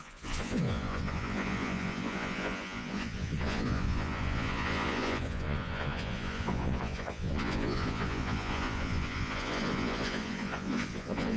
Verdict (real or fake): fake